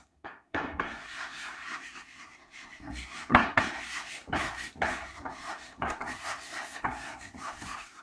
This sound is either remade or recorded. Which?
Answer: remade